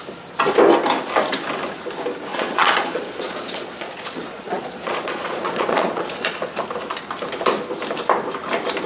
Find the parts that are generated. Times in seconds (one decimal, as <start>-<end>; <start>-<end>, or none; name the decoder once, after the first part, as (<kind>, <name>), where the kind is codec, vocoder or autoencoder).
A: 2.3-6.5 (vocoder, Vocos)